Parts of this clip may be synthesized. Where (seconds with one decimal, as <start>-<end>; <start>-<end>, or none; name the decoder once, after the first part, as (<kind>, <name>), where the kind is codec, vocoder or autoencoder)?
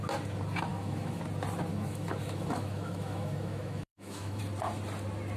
0.7-1.2 (autoencoder, DAC-VAE); 1.7-4.4